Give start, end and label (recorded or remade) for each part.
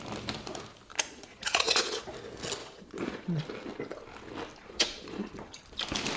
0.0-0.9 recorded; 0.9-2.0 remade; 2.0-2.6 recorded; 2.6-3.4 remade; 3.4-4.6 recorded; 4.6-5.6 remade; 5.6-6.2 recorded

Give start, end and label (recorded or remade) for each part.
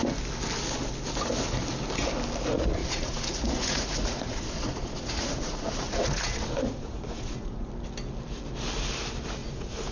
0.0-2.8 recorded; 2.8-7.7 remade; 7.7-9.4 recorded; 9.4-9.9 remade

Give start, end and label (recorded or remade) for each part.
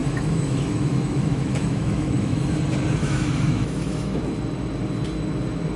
0.0-2.5 remade; 2.5-3.0 recorded; 3.0-4.2 remade; 4.2-5.8 recorded